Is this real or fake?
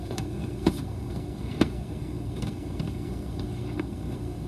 fake